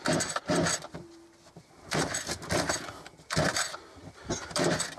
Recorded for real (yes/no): no